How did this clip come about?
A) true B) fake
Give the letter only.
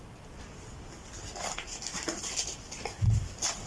A